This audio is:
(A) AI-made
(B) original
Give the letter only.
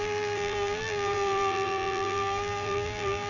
A